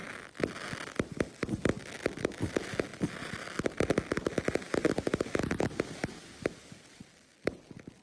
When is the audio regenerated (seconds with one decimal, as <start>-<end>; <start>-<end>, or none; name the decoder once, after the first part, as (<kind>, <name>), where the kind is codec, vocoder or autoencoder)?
none